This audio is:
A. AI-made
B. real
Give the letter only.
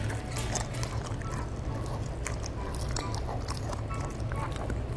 B